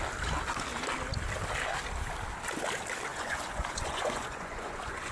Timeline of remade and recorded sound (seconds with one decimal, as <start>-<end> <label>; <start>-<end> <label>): 0.0-3.1 recorded; 3.1-5.1 remade